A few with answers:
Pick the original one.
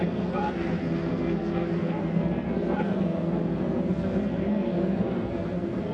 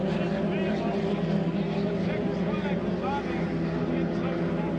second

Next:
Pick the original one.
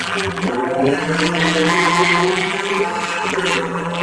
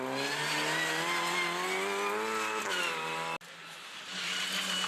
second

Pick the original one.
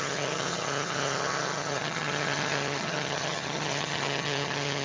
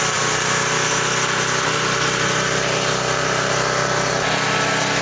second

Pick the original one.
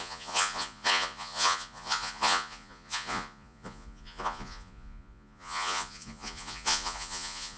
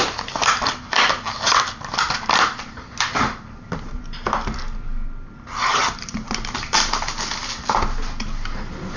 second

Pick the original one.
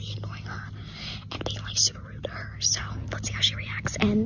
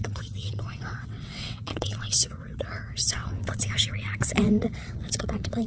first